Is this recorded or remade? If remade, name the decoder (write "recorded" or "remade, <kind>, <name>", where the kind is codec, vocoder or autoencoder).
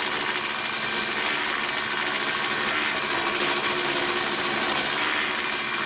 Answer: recorded